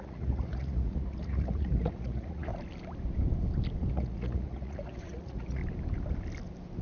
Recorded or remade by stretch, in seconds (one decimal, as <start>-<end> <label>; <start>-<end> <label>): 0.0-2.5 remade; 2.5-3.9 recorded; 3.9-5.6 remade; 5.6-6.8 recorded